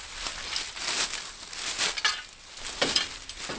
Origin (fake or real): real